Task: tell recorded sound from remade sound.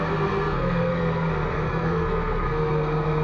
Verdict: remade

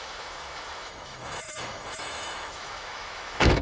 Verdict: remade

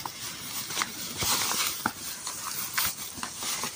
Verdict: recorded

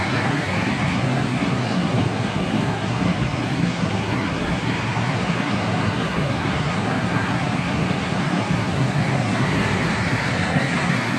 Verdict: remade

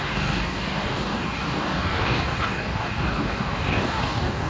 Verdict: remade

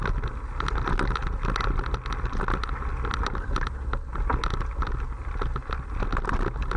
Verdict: recorded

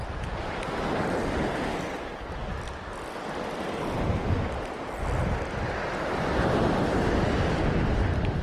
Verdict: recorded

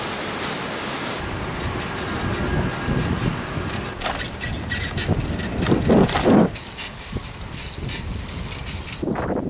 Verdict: recorded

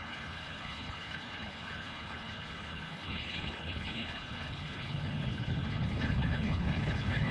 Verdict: remade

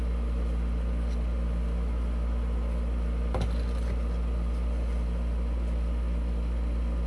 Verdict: recorded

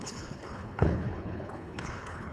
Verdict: remade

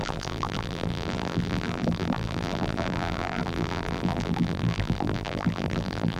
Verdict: remade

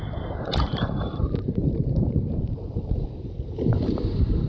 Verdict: remade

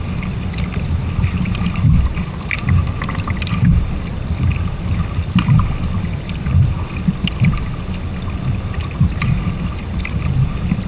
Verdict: recorded